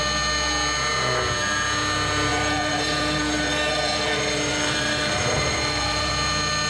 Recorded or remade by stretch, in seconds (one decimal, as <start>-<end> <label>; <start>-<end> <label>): 0.0-2.3 recorded; 2.3-6.1 remade; 6.1-6.7 recorded